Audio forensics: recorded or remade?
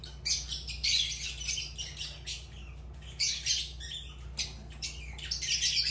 recorded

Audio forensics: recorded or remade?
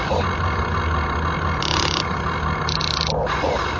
recorded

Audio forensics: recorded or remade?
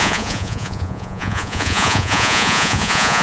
remade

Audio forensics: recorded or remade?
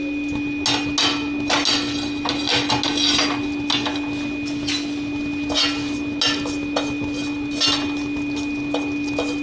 recorded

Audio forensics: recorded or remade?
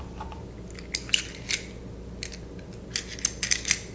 recorded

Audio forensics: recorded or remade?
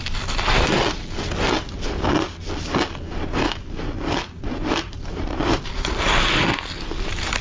recorded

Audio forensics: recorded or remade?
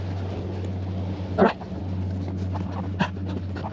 recorded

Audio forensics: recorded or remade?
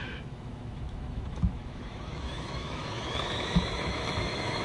remade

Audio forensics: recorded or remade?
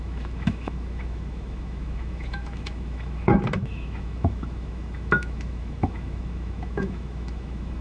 remade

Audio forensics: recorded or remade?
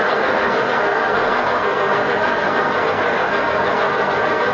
remade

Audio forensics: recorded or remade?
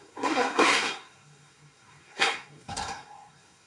remade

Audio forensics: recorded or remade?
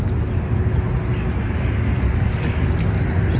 recorded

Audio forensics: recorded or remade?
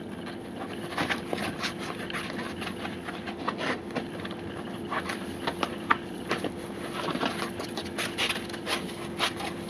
recorded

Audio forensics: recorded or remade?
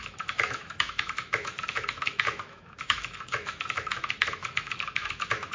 remade